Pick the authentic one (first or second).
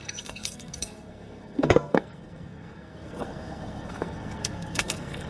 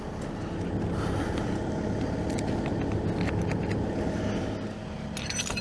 second